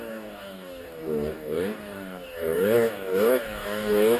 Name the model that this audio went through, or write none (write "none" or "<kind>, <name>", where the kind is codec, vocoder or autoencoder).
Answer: codec, DAC